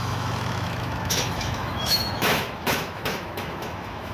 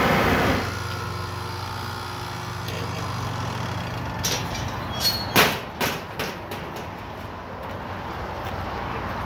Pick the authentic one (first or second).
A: second